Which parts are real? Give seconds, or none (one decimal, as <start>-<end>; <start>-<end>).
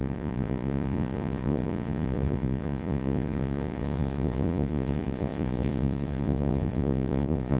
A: none